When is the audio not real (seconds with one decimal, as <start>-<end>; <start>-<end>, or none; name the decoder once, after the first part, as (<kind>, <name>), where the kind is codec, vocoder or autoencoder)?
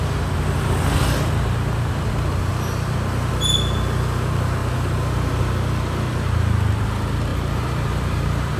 4.6-5.3 (vocoder, BigVGAN v2); 7.3-8.6